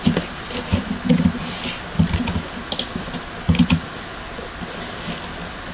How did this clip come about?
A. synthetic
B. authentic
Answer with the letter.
B